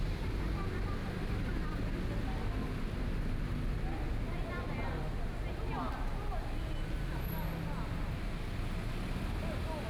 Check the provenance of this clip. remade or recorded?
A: recorded